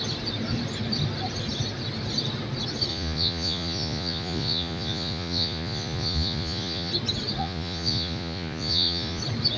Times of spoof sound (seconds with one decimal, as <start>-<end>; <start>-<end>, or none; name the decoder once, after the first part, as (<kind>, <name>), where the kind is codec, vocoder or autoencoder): 2.9-6.9 (vocoder, Vocos); 7.4-9.2